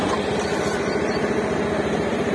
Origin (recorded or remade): recorded